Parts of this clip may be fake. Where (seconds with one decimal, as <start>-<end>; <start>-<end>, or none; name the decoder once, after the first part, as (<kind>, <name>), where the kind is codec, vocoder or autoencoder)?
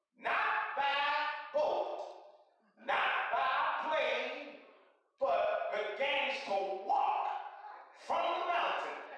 none